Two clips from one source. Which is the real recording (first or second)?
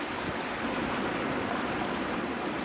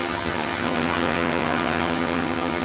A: first